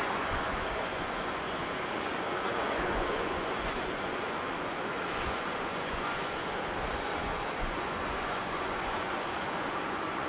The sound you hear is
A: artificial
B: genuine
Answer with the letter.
A